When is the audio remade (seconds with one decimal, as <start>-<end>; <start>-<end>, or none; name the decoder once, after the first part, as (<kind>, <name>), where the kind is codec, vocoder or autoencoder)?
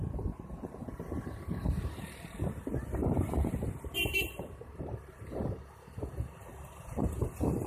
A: 0.8-1.9 (vocoder, BigVGAN v2); 3.0-4.8